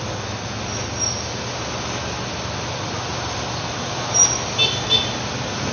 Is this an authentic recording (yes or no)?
yes